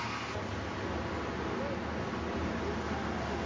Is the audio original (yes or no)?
yes